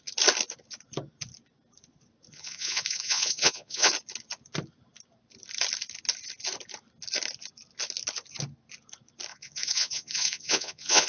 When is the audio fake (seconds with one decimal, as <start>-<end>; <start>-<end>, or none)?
2.3-3.9; 9.3-11.1